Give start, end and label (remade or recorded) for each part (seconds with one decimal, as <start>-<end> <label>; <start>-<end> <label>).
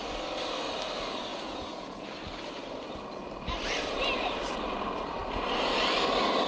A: 0.0-1.3 recorded; 1.3-2.1 remade; 2.1-6.5 recorded